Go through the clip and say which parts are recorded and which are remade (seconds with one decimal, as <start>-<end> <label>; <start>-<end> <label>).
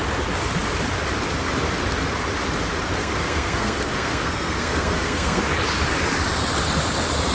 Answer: 0.0-3.0 recorded; 3.0-5.4 remade; 5.4-7.3 recorded